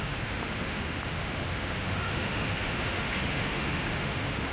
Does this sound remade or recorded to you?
remade